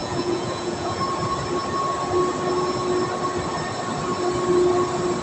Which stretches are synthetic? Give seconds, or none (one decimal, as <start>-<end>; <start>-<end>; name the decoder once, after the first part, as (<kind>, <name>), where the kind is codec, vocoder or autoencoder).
0.0-1.0 (vocoder, Vocos)